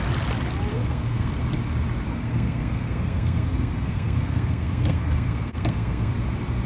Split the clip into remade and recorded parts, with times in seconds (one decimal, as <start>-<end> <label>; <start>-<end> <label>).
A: 0.0-0.7 recorded; 0.7-1.3 remade; 1.3-2.1 recorded; 2.1-6.1 remade; 6.1-6.7 recorded